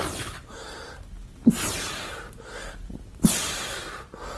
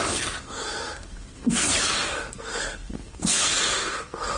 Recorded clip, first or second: first